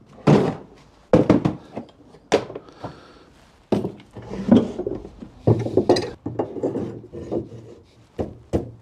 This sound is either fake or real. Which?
real